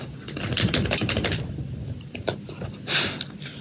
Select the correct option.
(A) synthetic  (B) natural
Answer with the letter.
B